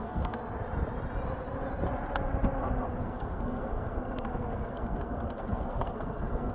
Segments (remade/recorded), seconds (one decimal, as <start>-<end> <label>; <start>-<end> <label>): 0.0-0.4 remade; 0.4-3.0 recorded; 3.0-6.5 remade